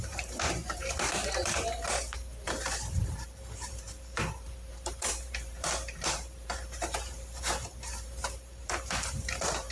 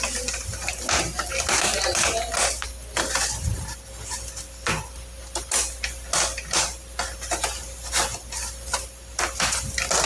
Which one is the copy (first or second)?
first